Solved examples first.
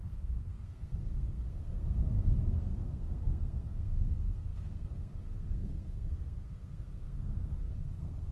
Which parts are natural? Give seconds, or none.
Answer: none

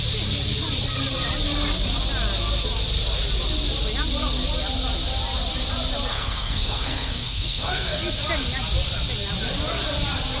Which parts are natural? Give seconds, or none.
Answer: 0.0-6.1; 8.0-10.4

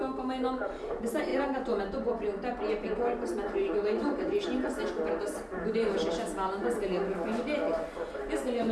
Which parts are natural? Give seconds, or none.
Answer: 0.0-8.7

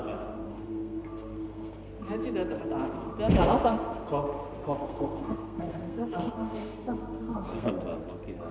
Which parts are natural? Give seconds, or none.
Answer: 0.0-0.5; 1.9-4.8; 7.7-8.5

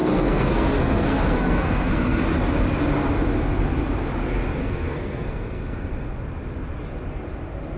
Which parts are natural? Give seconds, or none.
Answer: 2.2-4.6; 6.1-7.8

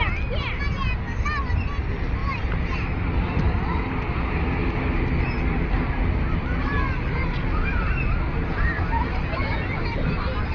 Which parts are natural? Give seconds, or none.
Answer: 0.0-10.5

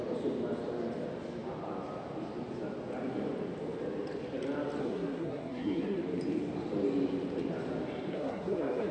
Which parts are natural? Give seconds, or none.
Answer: 0.0-4.8; 6.0-8.1